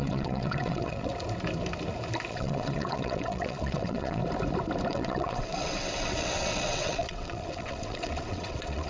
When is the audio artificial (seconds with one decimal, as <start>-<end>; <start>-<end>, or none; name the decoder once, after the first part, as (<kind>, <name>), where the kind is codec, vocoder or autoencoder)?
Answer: 0.0-1.1 (vocoder, WaveNeXt); 2.3-4.2; 4.9-8.9